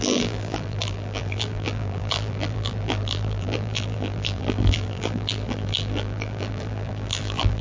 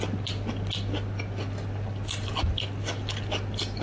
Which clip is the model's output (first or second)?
first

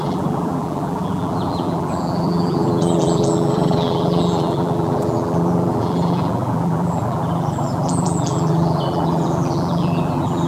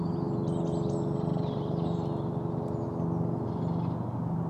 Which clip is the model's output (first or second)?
first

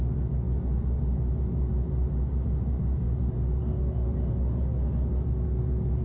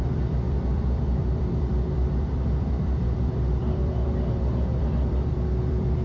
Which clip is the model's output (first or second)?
second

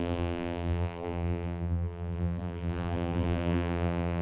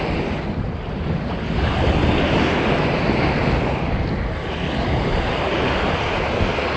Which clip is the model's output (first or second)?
first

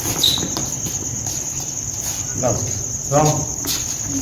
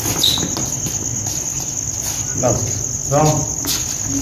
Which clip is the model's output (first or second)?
first